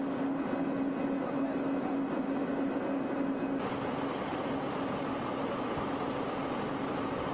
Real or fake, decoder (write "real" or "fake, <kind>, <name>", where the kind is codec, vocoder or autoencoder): real